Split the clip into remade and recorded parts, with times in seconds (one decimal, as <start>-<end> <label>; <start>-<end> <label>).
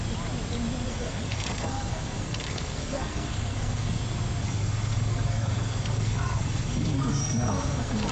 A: 0.0-0.9 recorded; 0.9-4.0 remade; 4.0-4.4 recorded; 4.4-8.1 remade